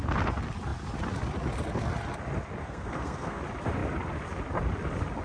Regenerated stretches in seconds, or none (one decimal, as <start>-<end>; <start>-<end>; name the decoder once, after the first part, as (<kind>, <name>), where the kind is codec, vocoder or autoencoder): 2.6-3.4 (codec, SNAC)

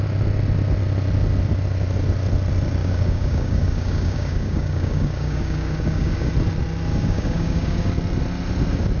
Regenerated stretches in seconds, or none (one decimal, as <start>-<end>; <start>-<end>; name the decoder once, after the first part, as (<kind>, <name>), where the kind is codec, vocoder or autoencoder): 2.8-6.3 (codec, DAC); 6.9-7.9

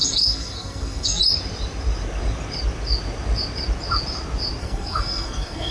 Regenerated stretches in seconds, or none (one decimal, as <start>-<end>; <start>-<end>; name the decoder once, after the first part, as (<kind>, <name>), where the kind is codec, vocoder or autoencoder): 0.0-1.2 (codec, SNAC); 4.6-5.7

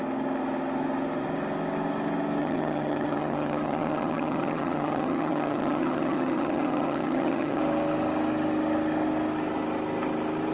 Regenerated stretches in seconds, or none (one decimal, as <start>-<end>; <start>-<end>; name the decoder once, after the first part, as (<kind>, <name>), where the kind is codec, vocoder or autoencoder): 2.4-7.6 (vocoder, HiFi-GAN)